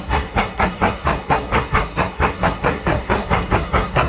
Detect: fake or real fake